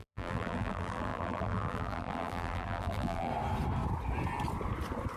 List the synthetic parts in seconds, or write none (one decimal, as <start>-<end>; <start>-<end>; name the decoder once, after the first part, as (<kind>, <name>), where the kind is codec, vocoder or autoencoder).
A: 0.0-3.3 (vocoder, BigVGAN v2)